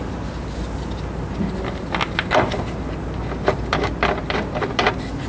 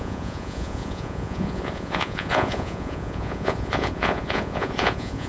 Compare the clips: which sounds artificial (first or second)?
second